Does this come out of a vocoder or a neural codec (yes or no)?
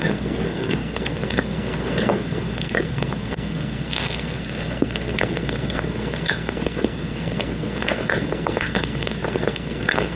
yes